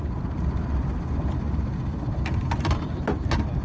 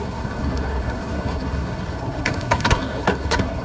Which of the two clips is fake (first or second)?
second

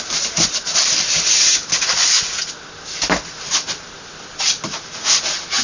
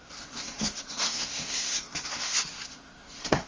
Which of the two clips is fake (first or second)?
second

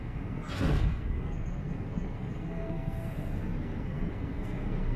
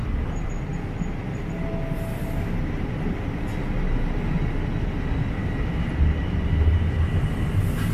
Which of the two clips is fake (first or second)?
first